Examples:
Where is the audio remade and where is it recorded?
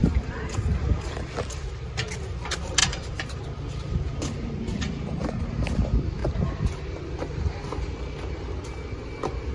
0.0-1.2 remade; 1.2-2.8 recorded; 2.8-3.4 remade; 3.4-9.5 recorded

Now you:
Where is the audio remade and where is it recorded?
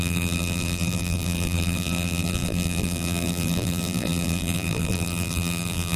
0.0-6.0 remade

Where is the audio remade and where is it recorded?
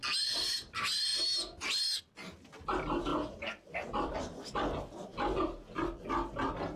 0.0-3.1 recorded; 3.1-4.2 remade; 4.2-5.1 recorded; 5.1-5.8 remade; 5.8-6.8 recorded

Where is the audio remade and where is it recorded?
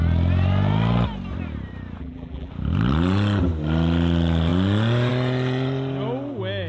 0.0-2.0 recorded; 2.0-2.5 remade; 2.5-6.7 recorded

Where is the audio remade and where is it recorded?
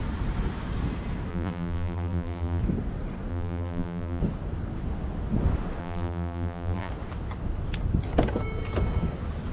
0.0-1.3 recorded; 1.3-2.6 remade; 2.6-3.3 recorded; 3.3-4.2 remade; 4.2-5.8 recorded; 5.8-6.9 remade; 6.9-9.5 recorded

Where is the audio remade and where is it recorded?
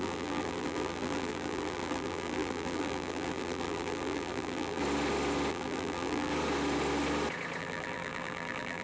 0.0-4.8 remade; 4.8-5.5 recorded; 5.5-6.3 remade; 6.3-7.6 recorded; 7.6-8.8 remade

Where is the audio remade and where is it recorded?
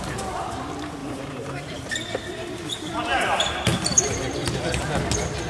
0.0-1.0 recorded; 1.0-3.2 remade; 3.2-3.7 recorded; 3.7-5.0 remade; 5.0-5.5 recorded